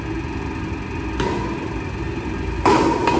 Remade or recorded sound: recorded